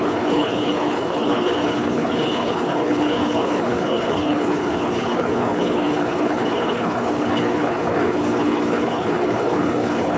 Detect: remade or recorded remade